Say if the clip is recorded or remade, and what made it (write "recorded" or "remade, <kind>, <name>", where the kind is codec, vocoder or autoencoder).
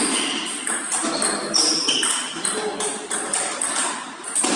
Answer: recorded